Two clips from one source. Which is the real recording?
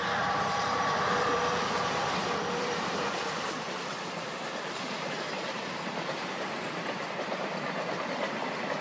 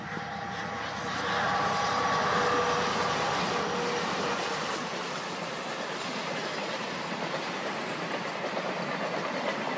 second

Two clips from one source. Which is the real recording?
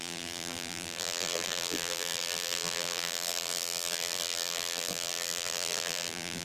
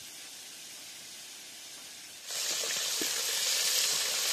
second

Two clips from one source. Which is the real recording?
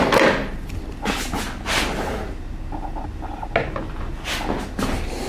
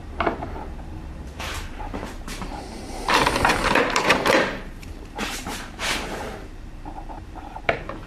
first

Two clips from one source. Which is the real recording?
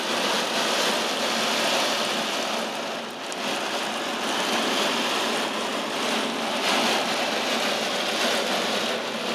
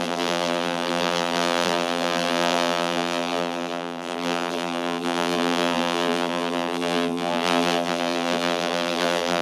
first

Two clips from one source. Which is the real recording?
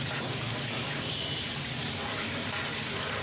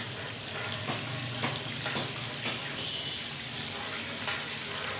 second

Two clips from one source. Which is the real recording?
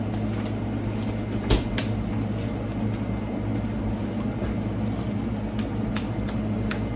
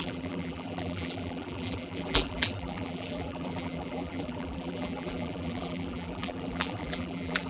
first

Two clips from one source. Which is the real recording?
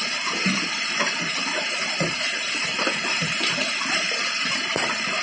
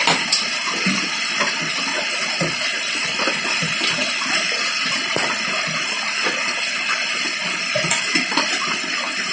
second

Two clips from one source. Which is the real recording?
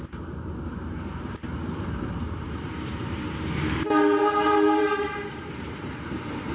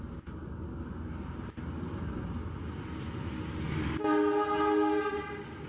second